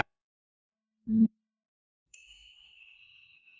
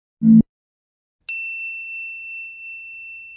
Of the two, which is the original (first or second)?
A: second